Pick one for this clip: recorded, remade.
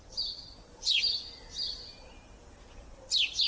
recorded